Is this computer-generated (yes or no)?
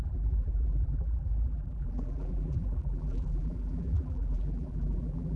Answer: yes